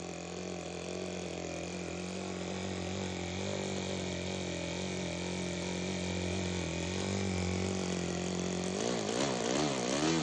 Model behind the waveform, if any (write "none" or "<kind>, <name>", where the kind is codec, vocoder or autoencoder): none